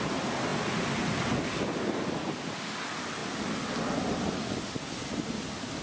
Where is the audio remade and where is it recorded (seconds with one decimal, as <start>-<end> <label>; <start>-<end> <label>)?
0.0-5.8 recorded